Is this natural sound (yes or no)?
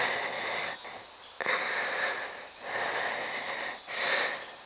yes